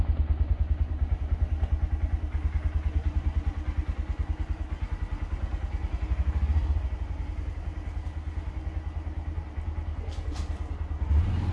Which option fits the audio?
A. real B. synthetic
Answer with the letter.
A